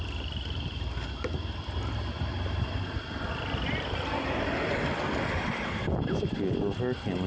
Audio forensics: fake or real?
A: real